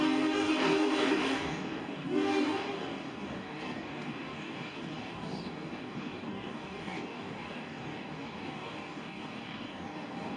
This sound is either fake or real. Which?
fake